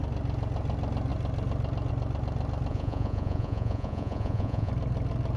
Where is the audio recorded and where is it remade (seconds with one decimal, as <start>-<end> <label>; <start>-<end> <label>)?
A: 0.0-2.7 recorded; 2.7-4.7 remade; 4.7-5.4 recorded